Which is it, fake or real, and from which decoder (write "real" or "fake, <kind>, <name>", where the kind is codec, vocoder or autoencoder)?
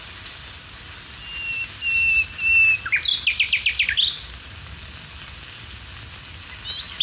real